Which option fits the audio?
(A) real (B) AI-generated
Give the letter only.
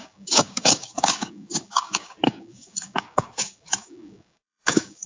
B